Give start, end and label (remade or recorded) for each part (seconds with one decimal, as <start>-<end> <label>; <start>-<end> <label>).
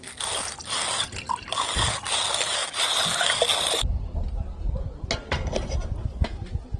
0.0-6.8 recorded